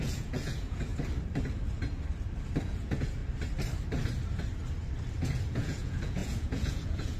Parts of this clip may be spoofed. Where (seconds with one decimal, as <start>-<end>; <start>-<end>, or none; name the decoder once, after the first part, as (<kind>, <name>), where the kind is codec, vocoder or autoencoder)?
0.0-0.9 (vocoder, Vocos); 2.6-3.2; 5.2-7.2